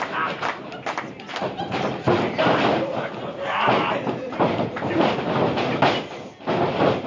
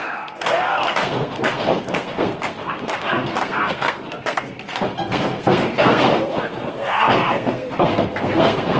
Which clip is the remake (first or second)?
second